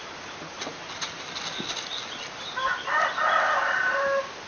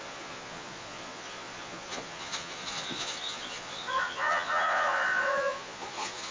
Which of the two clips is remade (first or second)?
second